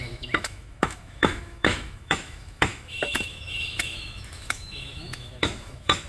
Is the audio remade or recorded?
remade